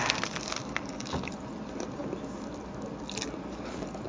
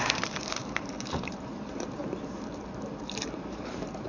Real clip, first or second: first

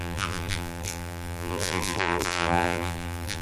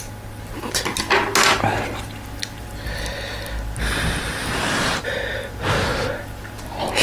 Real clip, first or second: second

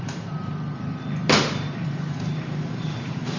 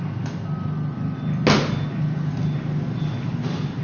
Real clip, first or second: second